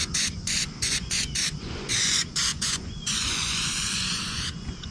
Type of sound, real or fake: fake